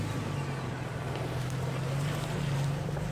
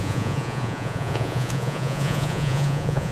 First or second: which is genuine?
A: first